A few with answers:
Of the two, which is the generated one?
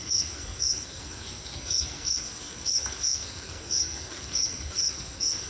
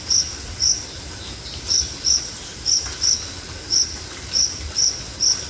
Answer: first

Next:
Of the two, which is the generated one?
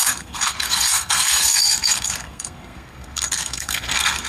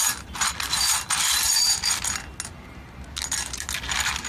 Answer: first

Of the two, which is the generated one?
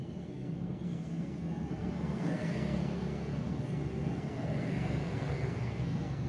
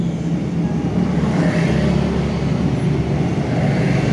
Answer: first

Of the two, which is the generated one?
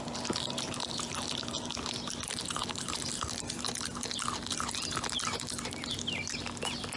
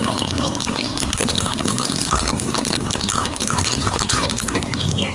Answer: second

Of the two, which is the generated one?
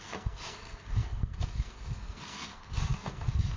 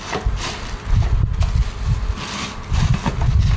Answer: first